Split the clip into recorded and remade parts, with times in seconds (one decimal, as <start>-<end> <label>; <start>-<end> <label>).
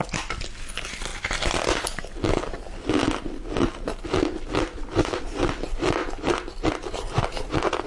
0.0-7.9 recorded